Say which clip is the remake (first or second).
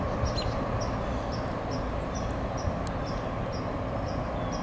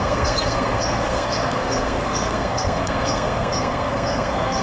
second